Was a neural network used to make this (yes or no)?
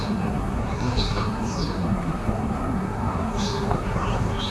yes